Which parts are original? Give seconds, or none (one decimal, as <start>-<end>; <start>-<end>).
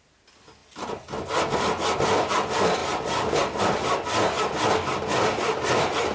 0.0-6.1